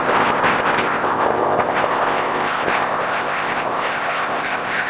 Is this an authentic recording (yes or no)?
no